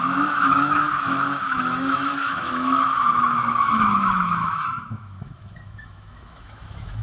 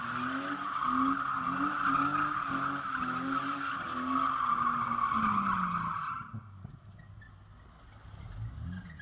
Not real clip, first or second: first